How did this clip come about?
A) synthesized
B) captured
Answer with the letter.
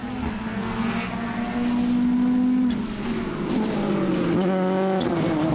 B